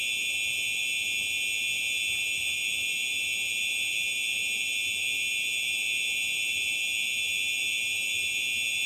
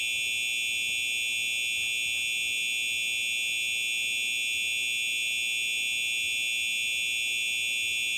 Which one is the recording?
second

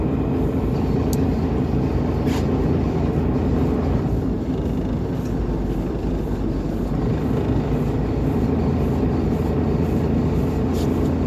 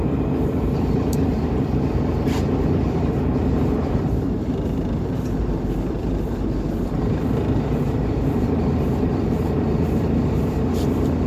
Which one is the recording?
first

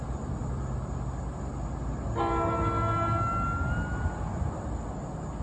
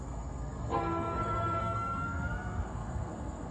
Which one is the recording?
first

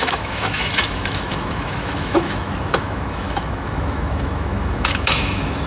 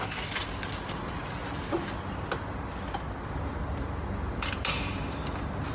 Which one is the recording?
second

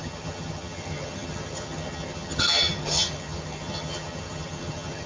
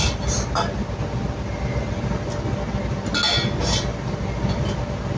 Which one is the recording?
second